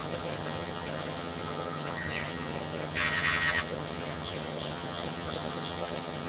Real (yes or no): no